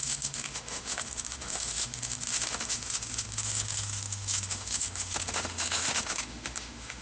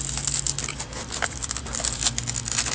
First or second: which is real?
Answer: second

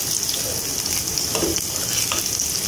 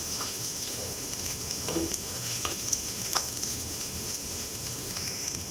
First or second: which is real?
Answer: first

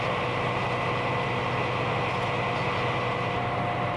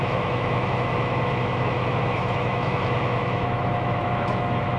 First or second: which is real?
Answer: first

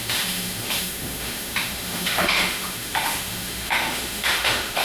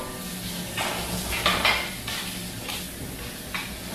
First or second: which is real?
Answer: second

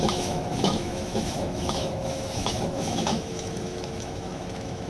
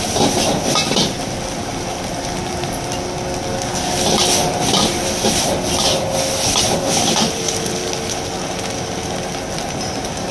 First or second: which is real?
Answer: second